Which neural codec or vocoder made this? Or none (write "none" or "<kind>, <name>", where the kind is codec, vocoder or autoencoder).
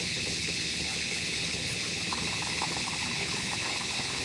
codec, HILCodec